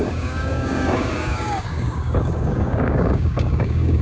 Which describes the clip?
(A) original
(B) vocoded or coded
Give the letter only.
B